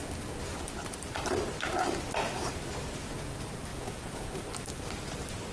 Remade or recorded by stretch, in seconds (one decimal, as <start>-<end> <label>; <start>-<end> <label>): 0.0-3.7 recorded; 3.7-4.4 remade; 4.4-5.5 recorded